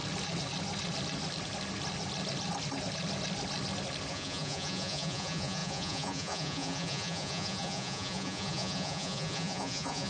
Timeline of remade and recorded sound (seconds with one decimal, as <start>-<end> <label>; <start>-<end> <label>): 0.0-4.1 recorded; 4.1-10.1 remade

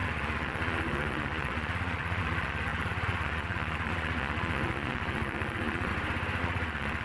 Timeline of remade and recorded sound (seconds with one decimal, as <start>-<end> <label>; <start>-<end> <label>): 0.0-5.9 remade; 5.9-6.4 recorded; 6.4-7.0 remade